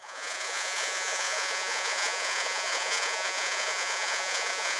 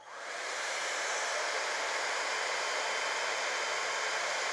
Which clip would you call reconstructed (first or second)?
first